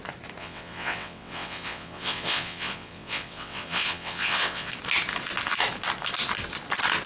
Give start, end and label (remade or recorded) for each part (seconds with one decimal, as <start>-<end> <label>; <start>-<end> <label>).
0.0-0.4 recorded; 0.4-4.7 remade; 4.7-7.1 recorded